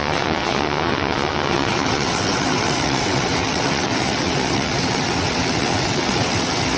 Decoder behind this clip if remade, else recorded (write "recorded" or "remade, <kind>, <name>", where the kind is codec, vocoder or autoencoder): remade, vocoder, WaveNeXt